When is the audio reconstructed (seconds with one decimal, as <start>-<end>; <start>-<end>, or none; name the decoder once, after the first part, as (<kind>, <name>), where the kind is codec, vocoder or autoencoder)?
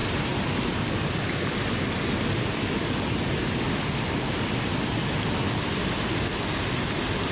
none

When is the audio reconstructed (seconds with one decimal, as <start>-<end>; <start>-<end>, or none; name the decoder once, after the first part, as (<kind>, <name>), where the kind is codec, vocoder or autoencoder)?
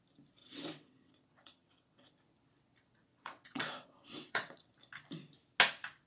0.4-2.1 (vocoder, WaveNeXt); 3.1-4.7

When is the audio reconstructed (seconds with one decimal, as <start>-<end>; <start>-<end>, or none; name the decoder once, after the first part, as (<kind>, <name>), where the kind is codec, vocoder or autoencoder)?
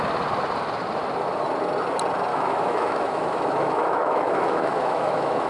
2.3-5.5 (autoencoder, DAC-VAE)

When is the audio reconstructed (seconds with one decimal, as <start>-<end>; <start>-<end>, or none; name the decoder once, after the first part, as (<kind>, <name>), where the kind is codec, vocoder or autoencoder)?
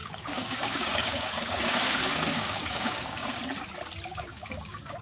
0.0-3.4 (codec, DAC); 4.1-5.0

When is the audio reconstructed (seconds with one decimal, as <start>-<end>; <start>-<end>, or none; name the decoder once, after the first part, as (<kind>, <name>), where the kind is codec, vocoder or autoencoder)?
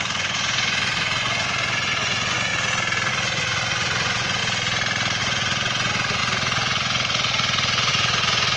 0.0-2.5 (vocoder, Vocos); 3.1-4.4; 5.2-8.6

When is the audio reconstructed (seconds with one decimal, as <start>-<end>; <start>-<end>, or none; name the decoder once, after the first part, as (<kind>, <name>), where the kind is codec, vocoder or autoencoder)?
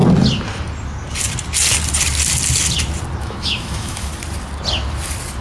3.2-4.1 (autoencoder, DAC-VAE)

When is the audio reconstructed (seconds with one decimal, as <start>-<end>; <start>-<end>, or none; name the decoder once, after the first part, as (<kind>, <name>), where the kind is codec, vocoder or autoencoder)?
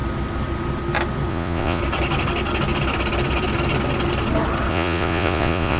1.3-1.8 (vocoder, Vocos); 4.7-5.8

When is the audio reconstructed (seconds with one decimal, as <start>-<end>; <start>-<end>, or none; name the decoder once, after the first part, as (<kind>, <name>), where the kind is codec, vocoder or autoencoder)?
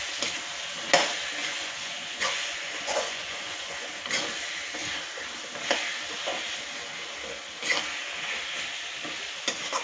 1.4-3.9 (vocoder, Vocos)